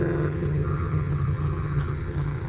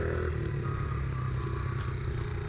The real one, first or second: second